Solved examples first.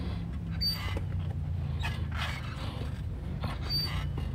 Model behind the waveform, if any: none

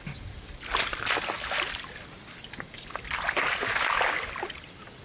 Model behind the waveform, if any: none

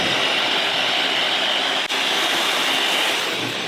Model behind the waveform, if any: none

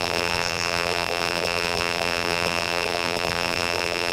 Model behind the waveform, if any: vocoder, BigVGAN v2